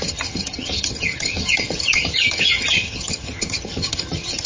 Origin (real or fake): fake